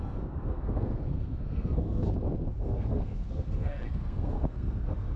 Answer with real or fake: fake